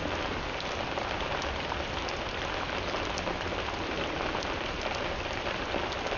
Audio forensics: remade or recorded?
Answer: recorded